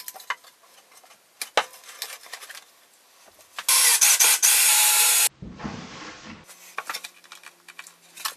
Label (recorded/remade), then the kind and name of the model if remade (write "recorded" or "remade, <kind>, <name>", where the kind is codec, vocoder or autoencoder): recorded